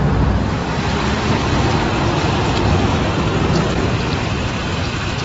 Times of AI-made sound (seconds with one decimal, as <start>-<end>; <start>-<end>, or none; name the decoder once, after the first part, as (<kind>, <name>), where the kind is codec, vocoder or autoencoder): 0.0-5.2 (vocoder, BigVGAN v2)